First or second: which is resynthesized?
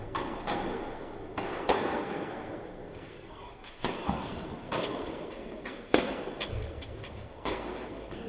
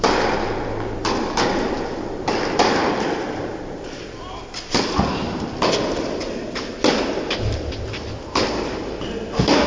first